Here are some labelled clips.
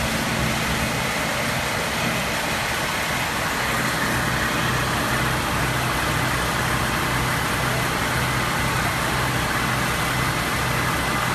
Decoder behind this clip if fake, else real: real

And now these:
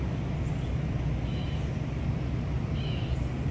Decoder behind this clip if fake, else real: real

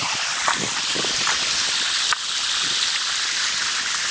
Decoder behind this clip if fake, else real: real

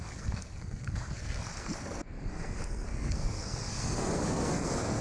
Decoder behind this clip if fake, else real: fake, codec, SNAC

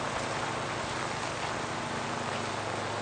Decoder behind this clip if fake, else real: real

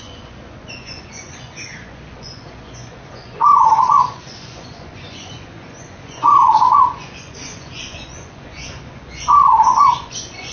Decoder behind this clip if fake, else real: fake, vocoder, Vocos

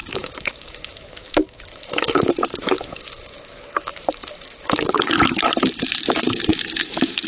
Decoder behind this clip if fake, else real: fake, autoencoder, DAC-VAE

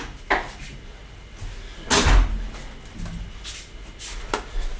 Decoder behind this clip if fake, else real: real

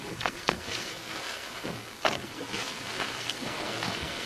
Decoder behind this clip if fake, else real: fake, codec, SNAC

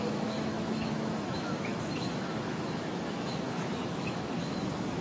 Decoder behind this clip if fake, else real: fake, autoencoder, DAC-VAE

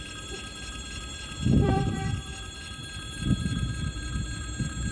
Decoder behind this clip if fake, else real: fake, vocoder, BigVGAN v2